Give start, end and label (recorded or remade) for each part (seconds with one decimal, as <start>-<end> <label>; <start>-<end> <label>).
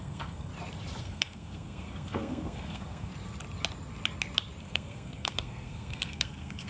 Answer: 0.0-0.5 remade; 0.5-1.0 recorded; 1.0-3.1 remade; 3.1-4.6 recorded; 4.6-6.7 remade